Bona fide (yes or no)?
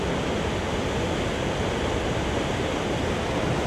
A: yes